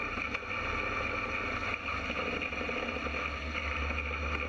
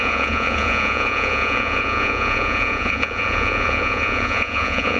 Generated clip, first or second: second